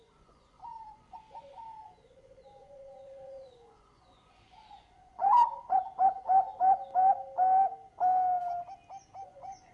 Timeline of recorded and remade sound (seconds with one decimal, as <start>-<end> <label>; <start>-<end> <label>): 0.0-5.8 remade; 5.8-9.2 recorded; 9.2-9.7 remade

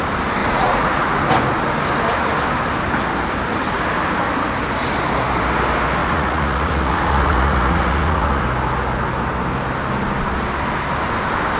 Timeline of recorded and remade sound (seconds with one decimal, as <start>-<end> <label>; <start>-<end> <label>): 0.0-0.4 recorded; 0.4-1.1 remade; 1.1-6.0 recorded; 6.0-8.4 remade; 8.4-11.6 recorded

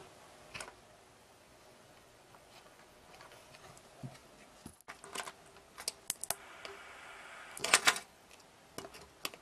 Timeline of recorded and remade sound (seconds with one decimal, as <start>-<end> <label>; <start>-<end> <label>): 0.0-1.2 recorded; 1.2-3.7 remade; 3.7-7.6 recorded; 7.6-8.4 remade; 8.4-9.4 recorded

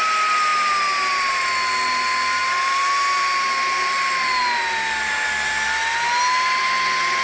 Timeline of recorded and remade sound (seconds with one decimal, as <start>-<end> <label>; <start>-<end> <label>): 0.0-7.2 recorded

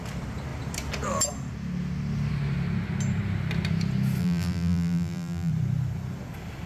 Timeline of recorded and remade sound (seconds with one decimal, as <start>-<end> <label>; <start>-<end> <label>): 0.0-4.2 recorded; 4.2-5.5 remade; 5.5-6.7 recorded

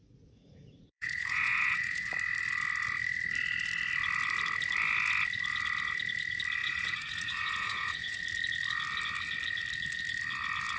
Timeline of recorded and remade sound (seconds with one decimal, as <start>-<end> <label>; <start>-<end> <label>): 0.0-2.1 remade; 2.1-6.6 recorded; 6.6-8.2 remade; 8.2-10.8 recorded

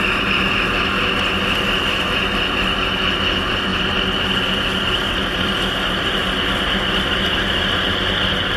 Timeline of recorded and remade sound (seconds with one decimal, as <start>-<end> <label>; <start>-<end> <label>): 0.0-8.6 recorded